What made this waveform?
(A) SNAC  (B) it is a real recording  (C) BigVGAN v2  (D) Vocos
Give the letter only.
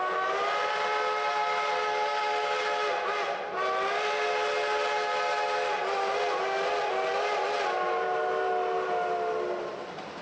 B